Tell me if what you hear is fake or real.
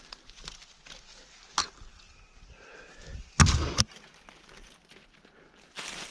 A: real